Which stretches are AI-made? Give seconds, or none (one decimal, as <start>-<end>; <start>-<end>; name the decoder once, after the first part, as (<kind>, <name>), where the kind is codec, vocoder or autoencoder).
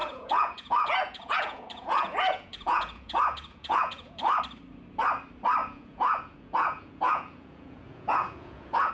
0.0-4.4 (vocoder, Vocos); 5.6-8.9